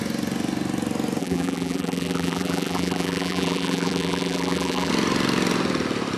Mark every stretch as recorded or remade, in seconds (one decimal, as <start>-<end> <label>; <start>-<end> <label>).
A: 0.0-1.2 recorded; 1.2-4.9 remade; 4.9-6.2 recorded